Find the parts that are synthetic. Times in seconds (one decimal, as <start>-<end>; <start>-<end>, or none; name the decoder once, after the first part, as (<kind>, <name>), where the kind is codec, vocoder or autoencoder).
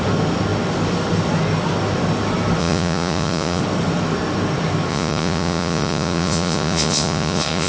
2.6-3.6 (vocoder, Vocos); 4.9-7.7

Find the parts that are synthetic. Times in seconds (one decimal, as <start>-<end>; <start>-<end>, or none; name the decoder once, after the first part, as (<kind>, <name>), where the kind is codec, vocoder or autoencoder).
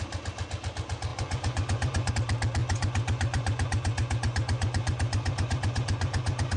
1.1-2.1 (vocoder, Vocos); 2.6-6.6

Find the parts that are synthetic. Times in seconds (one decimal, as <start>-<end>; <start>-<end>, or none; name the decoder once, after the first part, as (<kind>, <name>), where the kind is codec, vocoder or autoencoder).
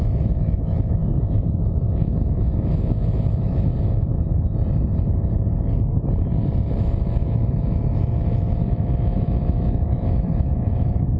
0.0-1.0 (autoencoder, DAC-VAE); 1.5-3.7; 6.8-11.2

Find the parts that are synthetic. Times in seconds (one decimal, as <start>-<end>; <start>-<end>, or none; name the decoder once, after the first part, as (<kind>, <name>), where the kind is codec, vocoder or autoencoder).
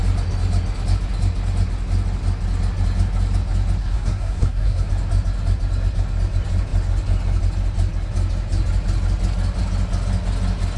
3.8-4.9 (codec, SNAC)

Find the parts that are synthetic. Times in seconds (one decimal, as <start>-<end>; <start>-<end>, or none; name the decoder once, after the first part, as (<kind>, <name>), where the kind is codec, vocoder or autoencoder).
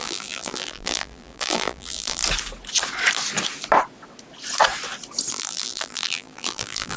0.0-2.2 (vocoder, BigVGAN v2); 5.3-7.0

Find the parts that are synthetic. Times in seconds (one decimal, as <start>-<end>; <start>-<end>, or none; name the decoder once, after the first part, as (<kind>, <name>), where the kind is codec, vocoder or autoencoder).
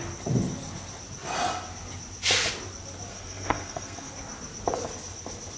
3.1-4.1 (codec, SNAC)